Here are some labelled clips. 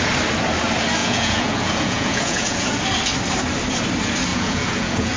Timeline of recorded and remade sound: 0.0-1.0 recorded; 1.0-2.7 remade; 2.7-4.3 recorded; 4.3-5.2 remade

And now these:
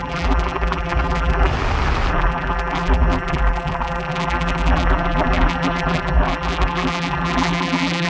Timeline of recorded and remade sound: 0.0-1.5 remade; 1.5-2.1 recorded; 2.1-8.1 remade

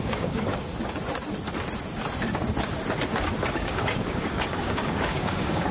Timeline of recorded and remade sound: 0.0-0.7 remade; 0.7-3.5 recorded; 3.5-5.7 remade

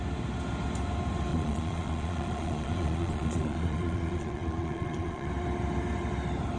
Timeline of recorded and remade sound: 0.0-1.3 recorded; 1.3-5.3 remade; 5.3-6.6 recorded

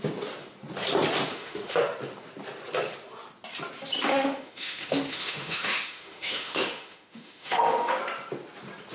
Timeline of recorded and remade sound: 0.0-1.3 recorded; 1.3-1.8 remade; 1.8-4.1 recorded; 4.1-8.0 remade; 8.0-8.9 recorded

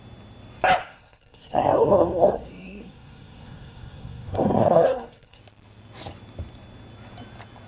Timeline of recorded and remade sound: 0.0-0.8 recorded; 0.8-5.4 remade; 5.4-7.7 recorded

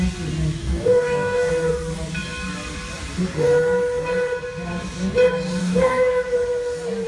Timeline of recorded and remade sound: 0.0-0.6 recorded; 0.6-1.5 remade; 1.5-5.6 recorded; 5.6-6.1 remade; 6.1-7.1 recorded

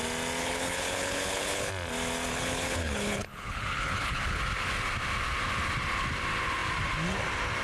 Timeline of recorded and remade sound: 0.0-0.4 recorded; 0.4-1.7 remade; 1.7-2.3 recorded; 2.3-4.4 remade; 4.4-7.6 recorded